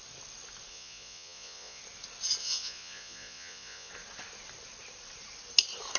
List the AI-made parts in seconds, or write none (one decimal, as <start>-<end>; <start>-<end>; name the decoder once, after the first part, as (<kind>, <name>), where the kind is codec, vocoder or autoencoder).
0.7-1.8 (vocoder, Vocos); 2.4-3.9